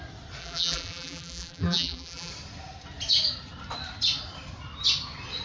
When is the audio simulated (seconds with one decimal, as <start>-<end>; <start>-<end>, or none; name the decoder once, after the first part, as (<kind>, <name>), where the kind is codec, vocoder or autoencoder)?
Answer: 0.4-2.3 (vocoder, BigVGAN v2)

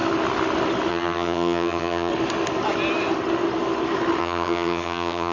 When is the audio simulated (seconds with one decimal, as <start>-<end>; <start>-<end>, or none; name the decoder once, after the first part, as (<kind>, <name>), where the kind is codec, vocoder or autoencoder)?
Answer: 0.9-2.1 (vocoder, HiFi-GAN); 4.2-5.3

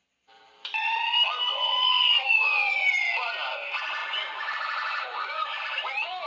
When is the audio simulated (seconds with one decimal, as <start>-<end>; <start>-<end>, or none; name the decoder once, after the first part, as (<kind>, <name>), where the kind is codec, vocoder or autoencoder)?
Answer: 1.5-3.1 (vocoder, Vocos); 4.0-5.6

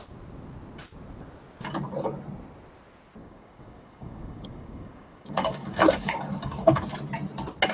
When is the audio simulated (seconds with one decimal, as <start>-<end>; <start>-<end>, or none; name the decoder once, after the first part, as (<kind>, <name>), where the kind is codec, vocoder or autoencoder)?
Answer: 3.2-6.8 (codec, DAC)